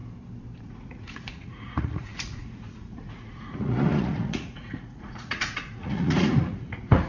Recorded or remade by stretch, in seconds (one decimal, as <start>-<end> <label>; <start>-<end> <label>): 0.0-0.6 recorded; 0.6-7.1 remade